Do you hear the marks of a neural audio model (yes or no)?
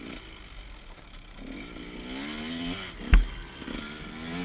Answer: no